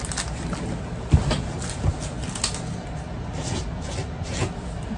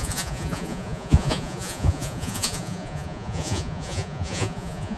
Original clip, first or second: first